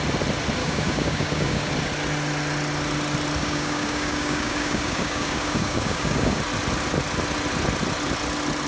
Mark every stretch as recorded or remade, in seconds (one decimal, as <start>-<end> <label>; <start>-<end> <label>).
0.0-0.6 recorded; 0.6-1.7 remade; 1.7-3.4 recorded; 3.4-6.4 remade; 6.4-8.7 recorded